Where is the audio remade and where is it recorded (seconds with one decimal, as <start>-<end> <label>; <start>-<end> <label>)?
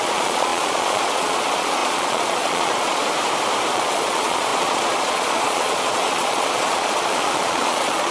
0.0-3.0 remade; 3.0-3.7 recorded; 3.7-8.1 remade